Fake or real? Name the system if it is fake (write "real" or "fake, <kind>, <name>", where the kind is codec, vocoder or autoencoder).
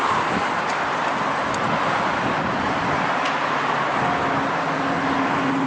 real